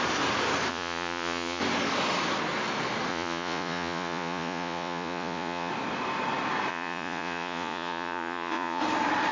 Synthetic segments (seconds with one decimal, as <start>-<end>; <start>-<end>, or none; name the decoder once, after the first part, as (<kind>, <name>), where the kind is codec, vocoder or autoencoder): 0.7-1.6 (vocoder, Vocos); 3.1-5.7; 6.7-8.8